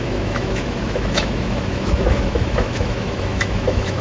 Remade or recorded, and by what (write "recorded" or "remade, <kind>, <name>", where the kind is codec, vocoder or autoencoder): remade, autoencoder, DAC-VAE